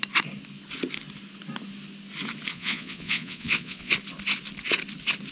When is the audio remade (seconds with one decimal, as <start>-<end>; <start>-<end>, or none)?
2.5-3.9